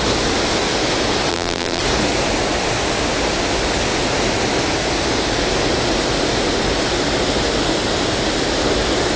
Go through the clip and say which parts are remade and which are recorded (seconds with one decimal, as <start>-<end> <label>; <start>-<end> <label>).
0.0-1.3 recorded; 1.3-1.8 remade; 1.8-9.2 recorded